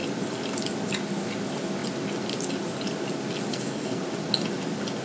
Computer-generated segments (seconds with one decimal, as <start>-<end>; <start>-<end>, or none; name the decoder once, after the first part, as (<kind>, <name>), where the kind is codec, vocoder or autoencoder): 3.5-4.0 (codec, SNAC)